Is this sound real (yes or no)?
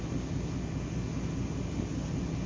yes